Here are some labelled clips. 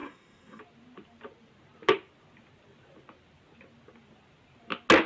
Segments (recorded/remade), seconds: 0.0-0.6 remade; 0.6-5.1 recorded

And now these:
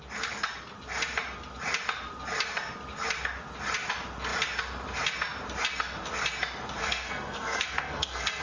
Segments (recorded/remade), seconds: 0.0-6.8 recorded; 6.8-8.4 remade

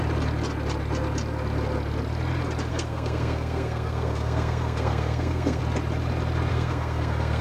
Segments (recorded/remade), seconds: 0.0-2.7 recorded; 2.7-5.6 remade; 5.6-6.5 recorded; 6.5-7.4 remade

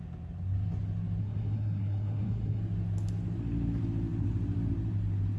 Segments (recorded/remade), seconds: 0.0-1.2 recorded; 1.2-2.6 remade; 2.6-5.4 recorded

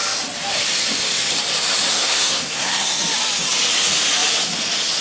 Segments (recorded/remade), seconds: 0.0-1.9 recorded; 1.9-3.0 remade; 3.0-5.0 recorded

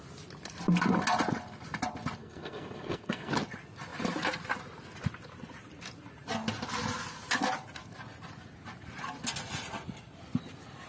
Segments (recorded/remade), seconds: 0.0-2.2 recorded; 2.2-3.3 remade; 3.3-10.9 recorded

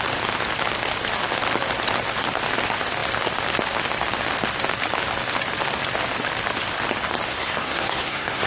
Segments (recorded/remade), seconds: 0.0-7.3 recorded; 7.3-8.5 remade

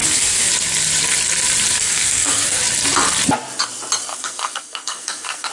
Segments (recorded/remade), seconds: 0.0-0.5 remade; 0.5-1.8 recorded; 1.8-2.6 remade; 2.6-4.0 recorded; 4.0-5.5 remade